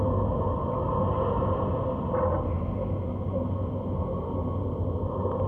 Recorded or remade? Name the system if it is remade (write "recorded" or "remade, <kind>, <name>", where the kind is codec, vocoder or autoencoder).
recorded